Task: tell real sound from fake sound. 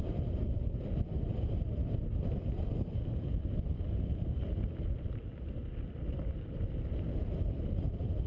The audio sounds fake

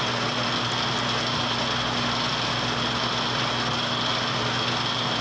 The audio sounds real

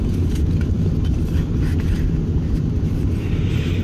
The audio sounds real